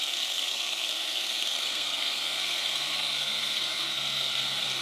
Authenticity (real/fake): fake